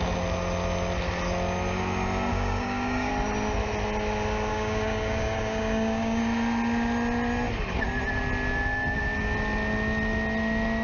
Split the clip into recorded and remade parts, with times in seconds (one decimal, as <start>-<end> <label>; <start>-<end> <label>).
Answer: 0.0-2.3 recorded; 2.3-3.1 remade; 3.1-4.5 recorded; 4.5-6.2 remade; 6.2-10.8 recorded

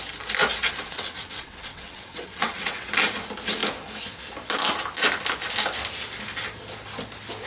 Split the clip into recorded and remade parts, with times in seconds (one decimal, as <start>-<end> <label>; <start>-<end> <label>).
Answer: 0.0-0.6 recorded; 0.6-2.9 remade; 2.9-7.5 recorded